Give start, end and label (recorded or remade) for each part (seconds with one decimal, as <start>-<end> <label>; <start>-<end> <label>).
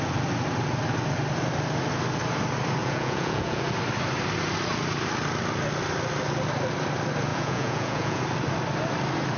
0.0-2.8 recorded; 2.8-3.6 remade; 3.6-7.3 recorded; 7.3-8.2 remade; 8.2-9.4 recorded